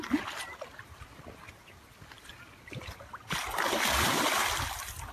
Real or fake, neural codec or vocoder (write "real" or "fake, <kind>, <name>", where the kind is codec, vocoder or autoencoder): real